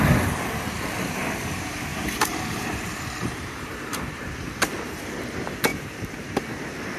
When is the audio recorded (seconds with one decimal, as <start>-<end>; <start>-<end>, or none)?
0.0-1.9; 5.0-5.7; 6.4-7.0